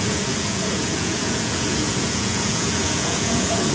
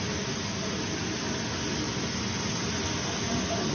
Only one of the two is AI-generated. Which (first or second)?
first